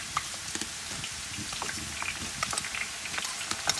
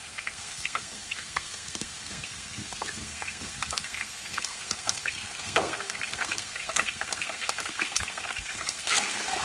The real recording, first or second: first